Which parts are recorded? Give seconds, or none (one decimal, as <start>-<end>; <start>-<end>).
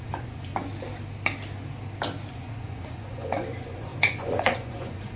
0.5-2.3